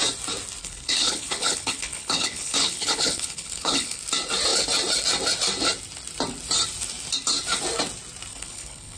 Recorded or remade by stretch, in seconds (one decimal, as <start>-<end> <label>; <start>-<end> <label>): 0.0-0.6 recorded; 0.6-4.0 remade; 4.0-8.3 recorded; 8.3-9.0 remade